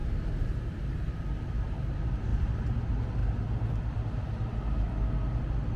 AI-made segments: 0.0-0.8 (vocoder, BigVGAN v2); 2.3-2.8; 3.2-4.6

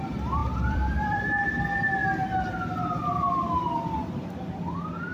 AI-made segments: 0.4-1.2 (vocoder, BigVGAN v2)

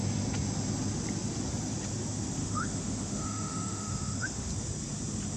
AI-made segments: 2.4-4.5 (autoencoder, DAC-VAE)